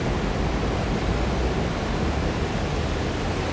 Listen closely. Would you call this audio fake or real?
real